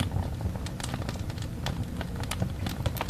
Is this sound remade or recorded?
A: remade